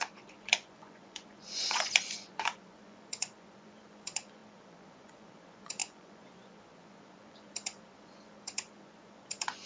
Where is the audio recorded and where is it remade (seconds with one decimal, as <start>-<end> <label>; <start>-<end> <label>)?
0.0-9.7 remade